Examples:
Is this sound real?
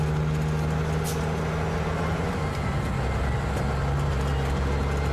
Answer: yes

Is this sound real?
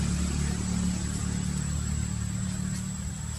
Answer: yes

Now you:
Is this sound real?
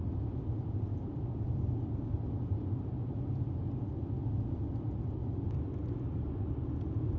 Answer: yes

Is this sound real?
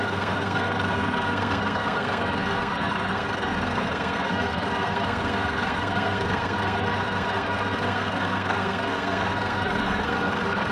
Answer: no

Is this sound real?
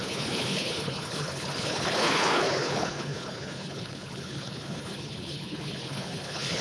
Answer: no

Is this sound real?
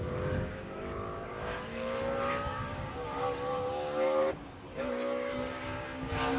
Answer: no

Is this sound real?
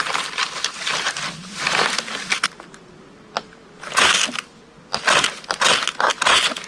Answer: yes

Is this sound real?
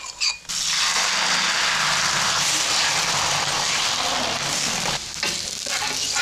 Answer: yes